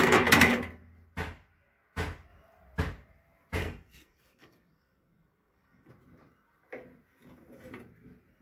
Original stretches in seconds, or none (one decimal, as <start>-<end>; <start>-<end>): 0.6-3.6; 5.9-8.4